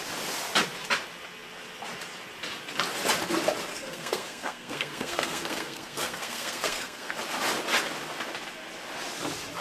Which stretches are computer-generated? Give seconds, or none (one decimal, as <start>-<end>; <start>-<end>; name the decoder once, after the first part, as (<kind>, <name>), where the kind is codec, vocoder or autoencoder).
3.7-7.1 (codec, SNAC)